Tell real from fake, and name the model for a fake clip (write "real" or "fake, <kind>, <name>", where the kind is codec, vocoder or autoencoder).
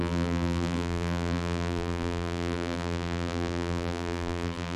fake, vocoder, BigVGAN v2